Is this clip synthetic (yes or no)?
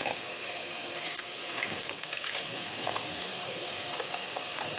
yes